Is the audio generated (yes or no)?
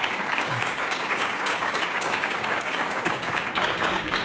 yes